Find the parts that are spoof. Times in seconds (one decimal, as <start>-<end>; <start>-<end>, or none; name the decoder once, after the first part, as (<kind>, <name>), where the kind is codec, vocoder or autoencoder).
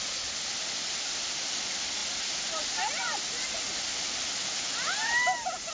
none